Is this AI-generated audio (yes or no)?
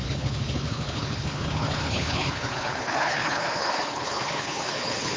yes